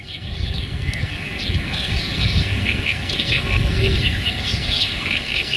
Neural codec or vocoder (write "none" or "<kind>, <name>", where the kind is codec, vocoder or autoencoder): codec, SNAC